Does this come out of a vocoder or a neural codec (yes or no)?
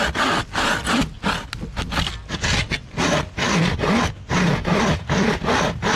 no